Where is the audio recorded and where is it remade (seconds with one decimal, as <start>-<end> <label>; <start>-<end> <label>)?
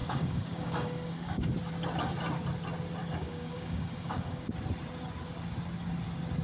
0.0-1.5 remade; 1.5-3.0 recorded; 3.0-4.5 remade; 4.5-6.4 recorded